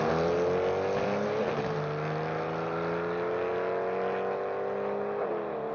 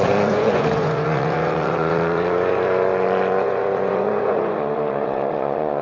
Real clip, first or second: first